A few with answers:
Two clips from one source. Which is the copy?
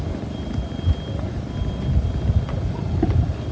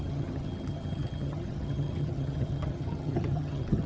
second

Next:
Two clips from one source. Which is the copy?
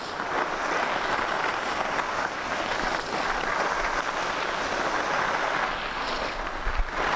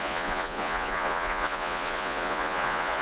second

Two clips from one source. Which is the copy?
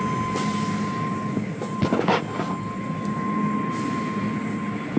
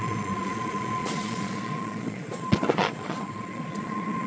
second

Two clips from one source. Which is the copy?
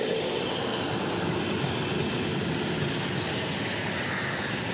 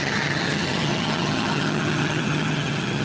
second